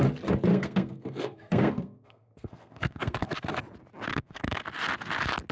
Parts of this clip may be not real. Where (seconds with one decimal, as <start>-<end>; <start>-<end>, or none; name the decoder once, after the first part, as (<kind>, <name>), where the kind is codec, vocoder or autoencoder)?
0.5-3.6 (codec, SNAC); 4.1-4.6

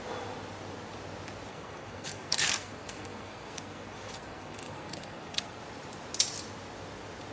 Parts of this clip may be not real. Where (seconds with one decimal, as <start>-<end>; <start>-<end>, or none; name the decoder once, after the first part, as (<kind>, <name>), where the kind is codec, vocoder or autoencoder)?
1.5-5.6 (codec, SNAC)

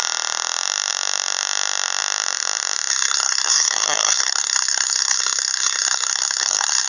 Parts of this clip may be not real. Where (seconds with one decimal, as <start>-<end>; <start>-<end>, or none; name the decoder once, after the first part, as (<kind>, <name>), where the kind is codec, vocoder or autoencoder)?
2.9-6.9 (codec, SNAC)

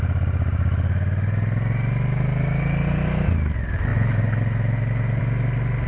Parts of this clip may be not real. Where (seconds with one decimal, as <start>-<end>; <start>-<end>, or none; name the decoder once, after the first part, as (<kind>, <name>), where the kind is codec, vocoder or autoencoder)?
none

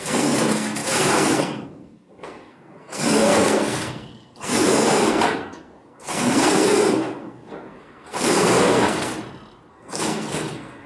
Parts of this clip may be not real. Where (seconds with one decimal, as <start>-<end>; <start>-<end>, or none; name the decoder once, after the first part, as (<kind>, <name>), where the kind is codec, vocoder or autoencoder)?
0.0-9.1 (codec, SNAC); 9.7-10.9